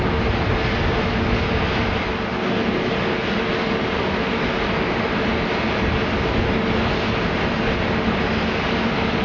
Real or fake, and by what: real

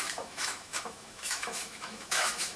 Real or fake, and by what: fake, autoencoder, DAC-VAE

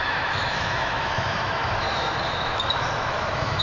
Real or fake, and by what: fake, autoencoder, DAC-VAE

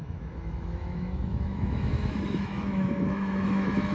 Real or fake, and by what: fake, autoencoder, DAC-VAE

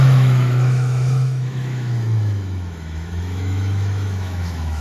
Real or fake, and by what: fake, autoencoder, DAC-VAE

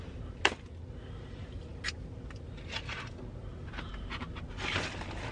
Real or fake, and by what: real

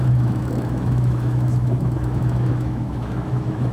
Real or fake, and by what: fake, autoencoder, DAC-VAE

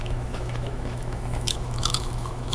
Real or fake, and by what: fake, autoencoder, DAC-VAE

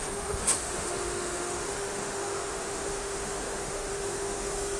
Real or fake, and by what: fake, autoencoder, DAC-VAE